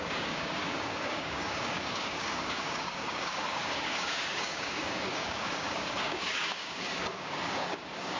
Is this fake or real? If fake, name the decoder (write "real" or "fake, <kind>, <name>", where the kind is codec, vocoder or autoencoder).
fake, codec, DAC